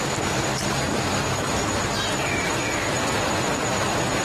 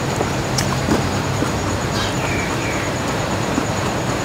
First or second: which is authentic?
first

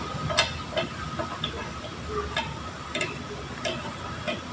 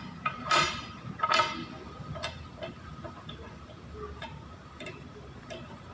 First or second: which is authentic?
first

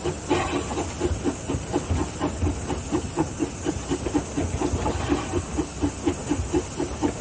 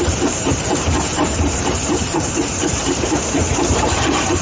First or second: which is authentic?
first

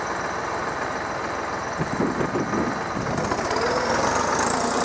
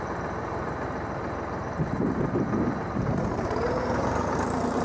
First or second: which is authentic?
first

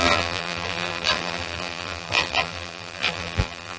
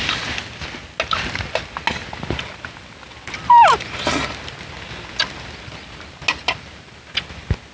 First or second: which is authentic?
second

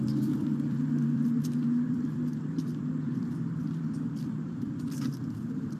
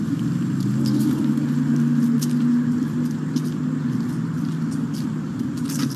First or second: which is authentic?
second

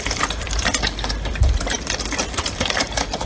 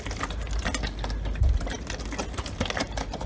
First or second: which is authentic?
second